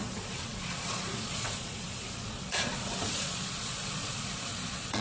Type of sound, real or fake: fake